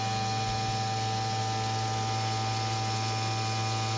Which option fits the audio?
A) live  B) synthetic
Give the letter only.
A